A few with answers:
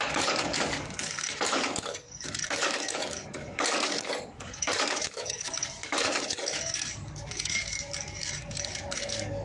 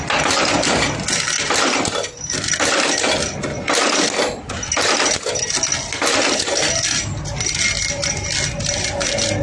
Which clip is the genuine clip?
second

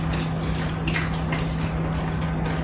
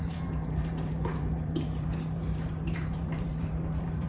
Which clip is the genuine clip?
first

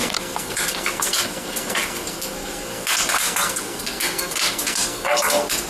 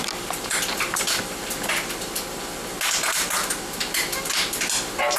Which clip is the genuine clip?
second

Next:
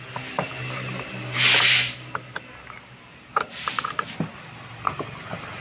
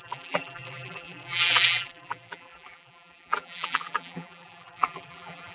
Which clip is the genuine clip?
first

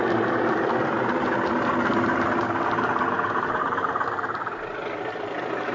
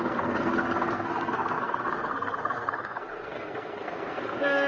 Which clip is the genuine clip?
first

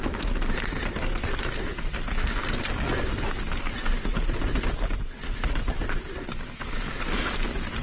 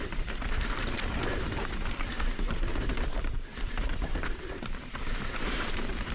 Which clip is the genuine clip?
first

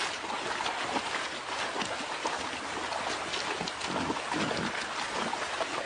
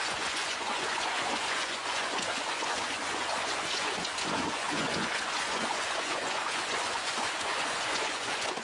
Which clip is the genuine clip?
first